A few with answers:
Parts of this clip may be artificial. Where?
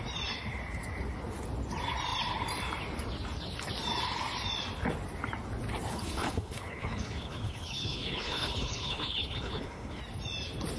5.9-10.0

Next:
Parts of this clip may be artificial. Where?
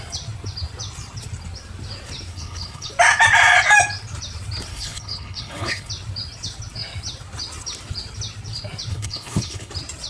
2.3-2.9; 4.7-5.9; 8.9-9.7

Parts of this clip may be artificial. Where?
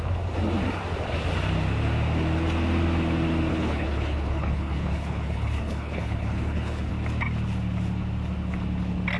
3.5-6.9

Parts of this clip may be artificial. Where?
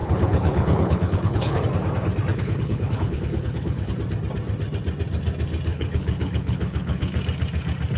0.0-1.6; 2.3-3.9; 5.7-7.2